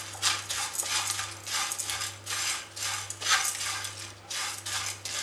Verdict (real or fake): real